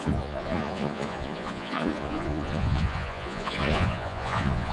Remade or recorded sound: remade